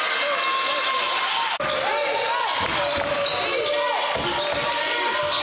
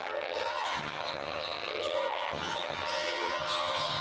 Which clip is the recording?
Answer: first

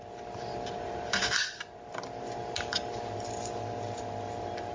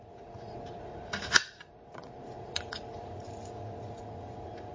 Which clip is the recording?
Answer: first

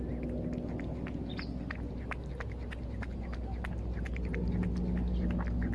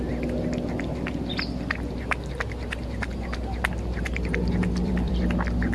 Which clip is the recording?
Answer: first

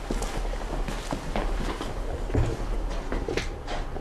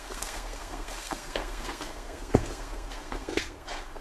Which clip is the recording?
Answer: first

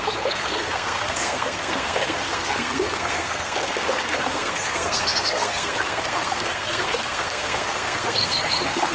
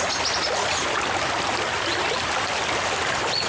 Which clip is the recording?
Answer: second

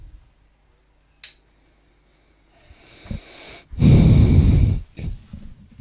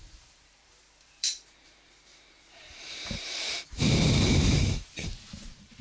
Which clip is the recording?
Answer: first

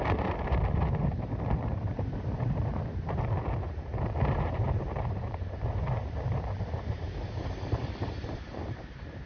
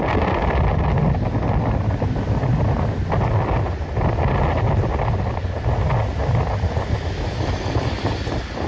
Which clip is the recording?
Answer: second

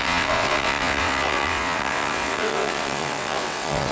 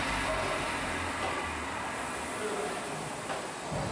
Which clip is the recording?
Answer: second